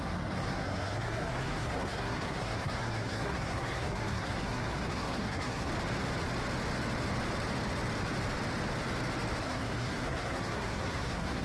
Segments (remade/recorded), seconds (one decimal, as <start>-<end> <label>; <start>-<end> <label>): 0.0-5.7 remade; 5.7-9.4 recorded; 9.4-11.4 remade